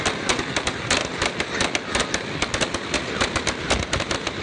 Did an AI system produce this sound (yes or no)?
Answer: no